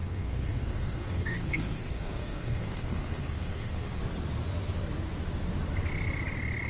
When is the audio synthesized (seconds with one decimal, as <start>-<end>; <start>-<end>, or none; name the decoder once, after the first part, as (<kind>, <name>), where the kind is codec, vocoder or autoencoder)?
0.0-4.0 (codec, SNAC)